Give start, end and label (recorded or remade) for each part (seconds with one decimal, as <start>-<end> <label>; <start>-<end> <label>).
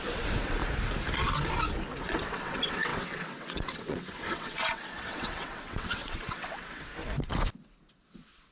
0.0-0.6 remade; 0.6-2.0 recorded; 2.0-6.9 remade; 6.9-7.9 recorded; 7.9-8.5 remade